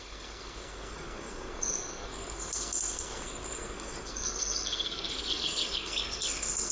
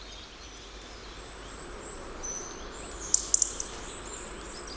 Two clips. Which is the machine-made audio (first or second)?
first